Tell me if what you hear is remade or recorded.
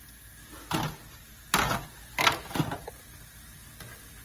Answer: recorded